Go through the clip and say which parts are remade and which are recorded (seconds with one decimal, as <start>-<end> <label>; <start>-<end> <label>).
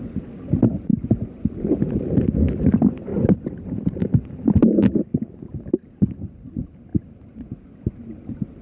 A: 0.0-3.1 recorded; 3.1-4.1 remade; 4.1-8.6 recorded